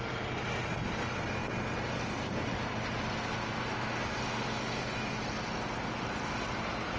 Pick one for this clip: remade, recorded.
recorded